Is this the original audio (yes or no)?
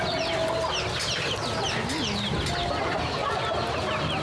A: yes